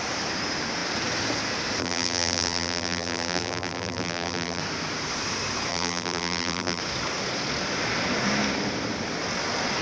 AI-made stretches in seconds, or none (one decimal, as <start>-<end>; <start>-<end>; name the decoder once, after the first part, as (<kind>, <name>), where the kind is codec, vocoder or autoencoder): 1.8-4.6 (vocoder, BigVGAN v2); 5.7-6.8